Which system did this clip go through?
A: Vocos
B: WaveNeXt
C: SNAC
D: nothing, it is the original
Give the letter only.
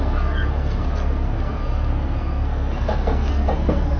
C